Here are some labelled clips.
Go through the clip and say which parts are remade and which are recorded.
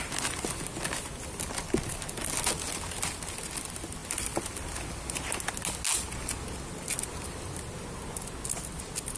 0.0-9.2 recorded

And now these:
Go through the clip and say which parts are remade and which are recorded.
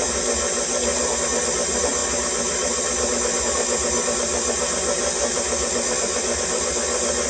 0.0-7.3 recorded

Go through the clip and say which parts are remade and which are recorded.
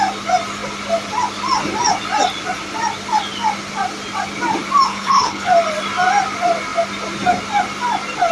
0.0-4.9 recorded; 4.9-5.5 remade; 5.5-8.3 recorded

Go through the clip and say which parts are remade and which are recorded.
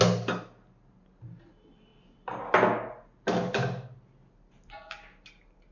0.0-5.7 recorded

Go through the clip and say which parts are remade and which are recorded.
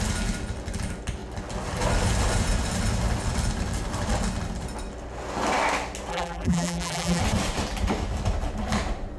0.0-6.1 recorded; 6.1-7.2 remade; 7.2-9.2 recorded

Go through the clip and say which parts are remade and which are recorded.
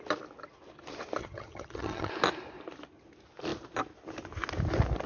0.0-1.2 recorded; 1.2-2.1 remade; 2.1-5.1 recorded